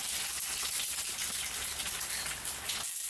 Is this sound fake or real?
real